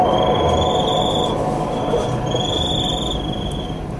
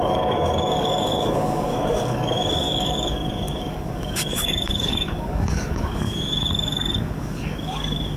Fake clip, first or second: second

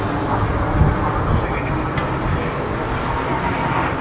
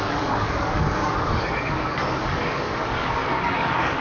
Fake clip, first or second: second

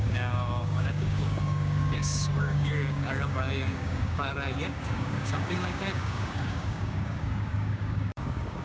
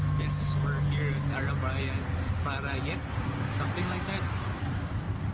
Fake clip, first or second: first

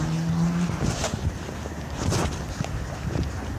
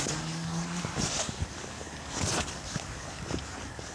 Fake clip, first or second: second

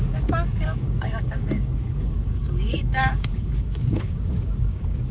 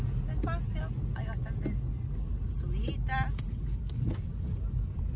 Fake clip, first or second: first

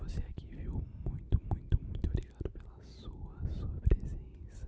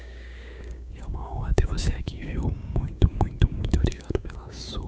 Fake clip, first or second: second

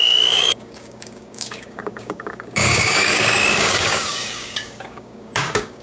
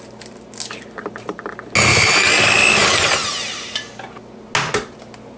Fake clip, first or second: first